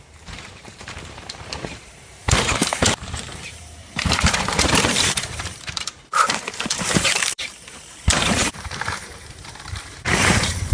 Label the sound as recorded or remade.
remade